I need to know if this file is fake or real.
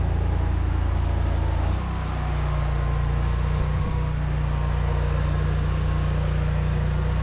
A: real